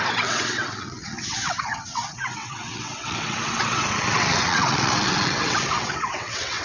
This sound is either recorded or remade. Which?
remade